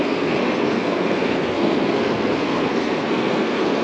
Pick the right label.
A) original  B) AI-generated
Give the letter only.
B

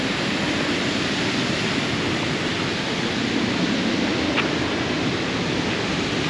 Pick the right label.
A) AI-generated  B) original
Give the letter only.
B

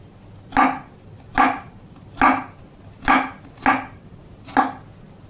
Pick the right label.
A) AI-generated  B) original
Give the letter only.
B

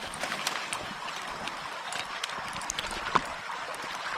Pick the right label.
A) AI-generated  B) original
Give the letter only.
B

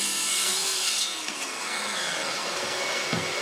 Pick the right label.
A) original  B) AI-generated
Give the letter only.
B